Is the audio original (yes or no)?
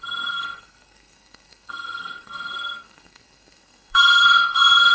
no